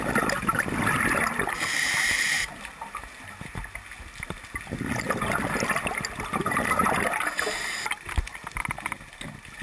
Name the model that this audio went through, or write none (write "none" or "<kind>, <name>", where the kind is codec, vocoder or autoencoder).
none